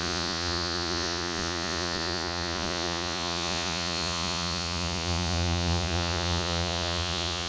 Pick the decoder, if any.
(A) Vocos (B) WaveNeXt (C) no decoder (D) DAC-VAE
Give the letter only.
A